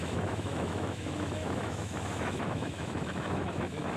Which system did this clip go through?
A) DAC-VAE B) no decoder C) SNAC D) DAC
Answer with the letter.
A